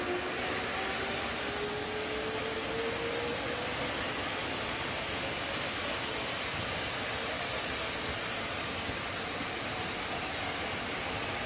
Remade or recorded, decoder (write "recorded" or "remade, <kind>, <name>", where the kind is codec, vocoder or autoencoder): recorded